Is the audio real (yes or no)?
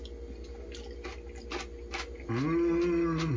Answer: yes